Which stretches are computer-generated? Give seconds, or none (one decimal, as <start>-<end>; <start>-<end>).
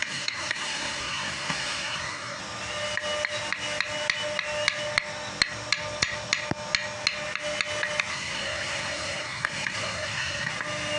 0.0-2.4; 8.1-10.5